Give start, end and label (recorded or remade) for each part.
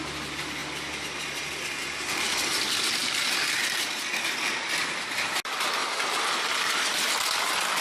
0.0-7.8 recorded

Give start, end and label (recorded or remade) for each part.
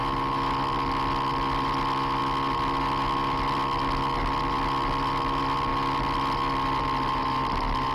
0.0-7.9 recorded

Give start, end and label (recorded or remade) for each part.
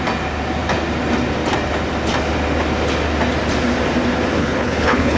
0.0-4.4 recorded; 4.4-5.2 remade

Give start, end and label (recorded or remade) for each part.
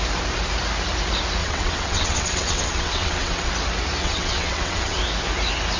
0.0-1.4 recorded; 1.4-3.5 remade; 3.5-4.0 recorded; 4.0-5.0 remade; 5.0-5.8 recorded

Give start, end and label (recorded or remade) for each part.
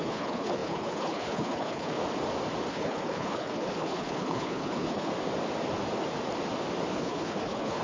0.0-2.0 remade; 2.0-2.7 recorded; 2.7-5.1 remade; 5.1-6.9 recorded; 6.9-7.8 remade